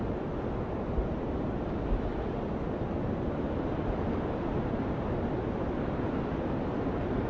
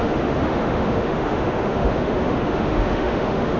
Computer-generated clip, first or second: second